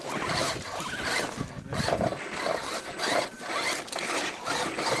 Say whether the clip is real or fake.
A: real